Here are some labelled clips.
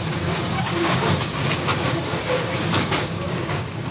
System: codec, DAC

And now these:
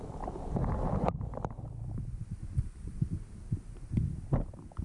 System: none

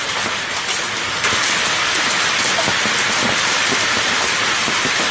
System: none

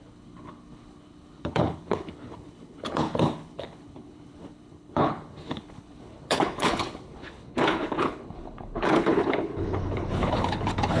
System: codec, HILCodec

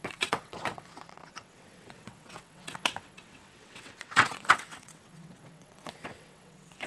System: vocoder, WaveNeXt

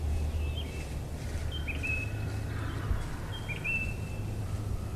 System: none